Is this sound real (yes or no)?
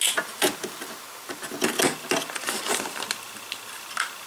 yes